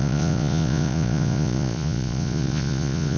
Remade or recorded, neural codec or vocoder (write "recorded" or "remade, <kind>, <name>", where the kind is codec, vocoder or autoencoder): remade, vocoder, Vocos